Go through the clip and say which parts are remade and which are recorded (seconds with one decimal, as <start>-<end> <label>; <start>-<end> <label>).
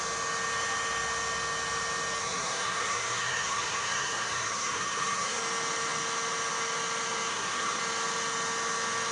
0.0-2.2 recorded; 2.2-5.4 remade; 5.4-7.3 recorded; 7.3-7.8 remade; 7.8-9.1 recorded